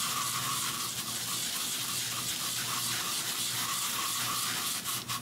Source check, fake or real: real